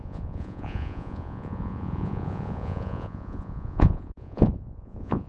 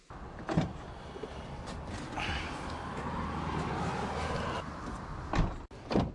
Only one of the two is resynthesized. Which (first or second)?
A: first